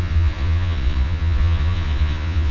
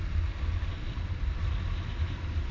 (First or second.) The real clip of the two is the second